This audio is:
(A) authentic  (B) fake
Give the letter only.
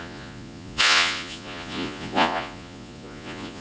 B